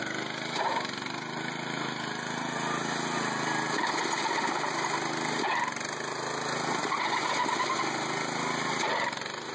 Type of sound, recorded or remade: recorded